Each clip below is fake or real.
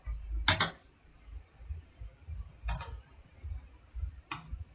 real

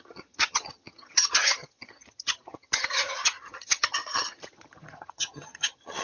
fake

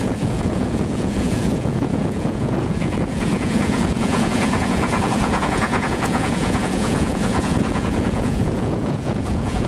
fake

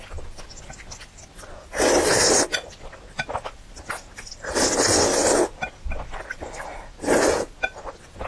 real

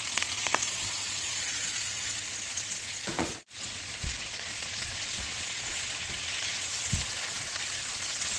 fake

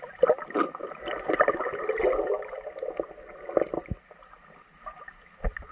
real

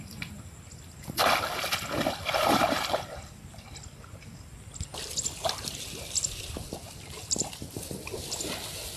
real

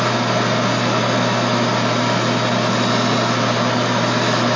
real